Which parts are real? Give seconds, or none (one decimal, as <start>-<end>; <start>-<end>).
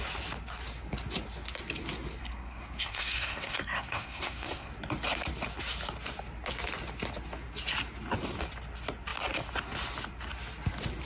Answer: 0.0-2.2; 4.7-11.1